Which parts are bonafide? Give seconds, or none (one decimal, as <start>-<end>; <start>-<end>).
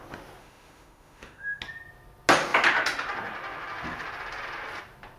0.0-0.4; 1.6-5.2